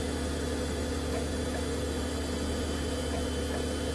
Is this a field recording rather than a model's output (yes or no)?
yes